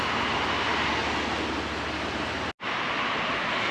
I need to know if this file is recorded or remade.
recorded